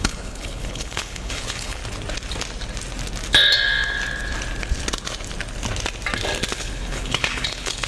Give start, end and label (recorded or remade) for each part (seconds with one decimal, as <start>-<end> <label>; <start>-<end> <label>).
0.0-1.8 remade; 1.8-6.5 recorded; 6.5-7.9 remade